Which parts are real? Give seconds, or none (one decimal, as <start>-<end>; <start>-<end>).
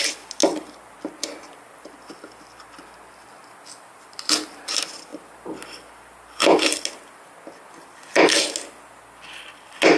0.0-10.0